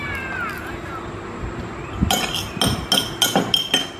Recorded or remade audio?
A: recorded